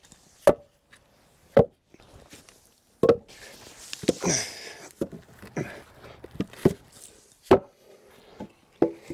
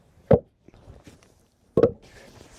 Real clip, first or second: first